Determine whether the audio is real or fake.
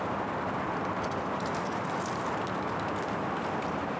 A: real